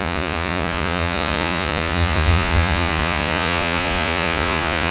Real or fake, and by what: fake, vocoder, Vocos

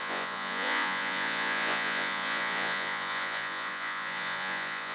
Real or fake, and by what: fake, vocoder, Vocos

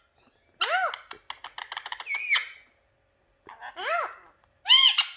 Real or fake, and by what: real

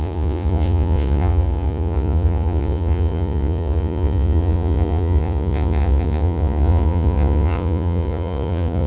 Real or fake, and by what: fake, vocoder, Vocos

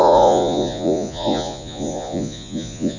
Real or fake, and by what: fake, vocoder, Vocos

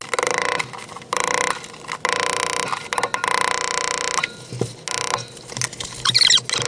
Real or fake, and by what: real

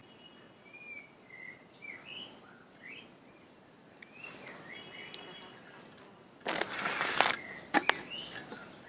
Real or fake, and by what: real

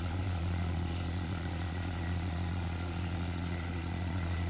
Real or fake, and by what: fake, vocoder, Vocos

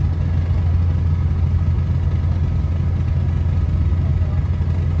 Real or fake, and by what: real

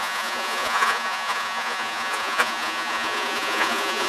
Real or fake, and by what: fake, vocoder, Vocos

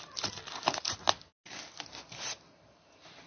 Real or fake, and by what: real